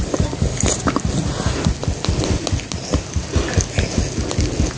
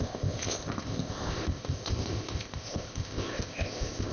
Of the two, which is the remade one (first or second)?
second